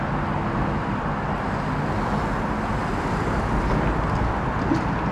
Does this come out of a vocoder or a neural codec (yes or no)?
no